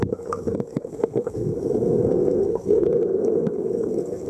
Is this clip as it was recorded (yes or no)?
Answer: no